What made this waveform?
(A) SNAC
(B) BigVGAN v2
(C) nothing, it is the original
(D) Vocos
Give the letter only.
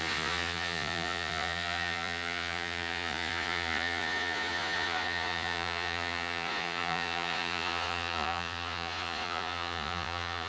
D